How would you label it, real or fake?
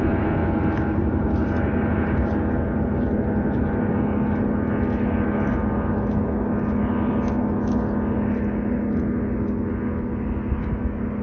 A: real